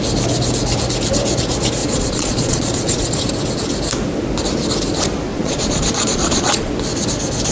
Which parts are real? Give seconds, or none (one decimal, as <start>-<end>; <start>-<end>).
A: 0.0-1.8; 3.2-5.3; 6.7-7.5